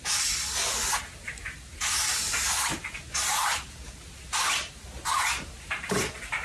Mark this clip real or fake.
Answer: real